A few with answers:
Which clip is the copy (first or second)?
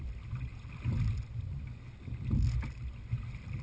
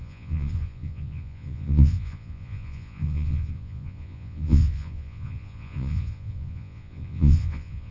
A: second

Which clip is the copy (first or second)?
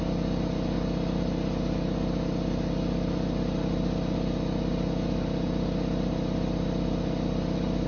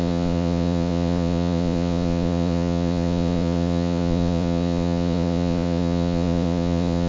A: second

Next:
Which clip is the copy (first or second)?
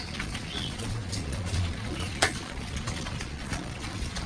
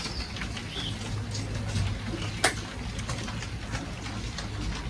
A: first